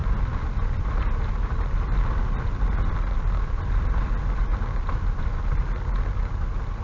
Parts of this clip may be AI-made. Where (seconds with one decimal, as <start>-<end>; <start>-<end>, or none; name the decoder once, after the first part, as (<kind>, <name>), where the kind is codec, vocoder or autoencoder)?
1.0-4.5 (vocoder, BigVGAN v2); 5.4-6.8